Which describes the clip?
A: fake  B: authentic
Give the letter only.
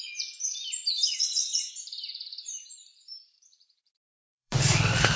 A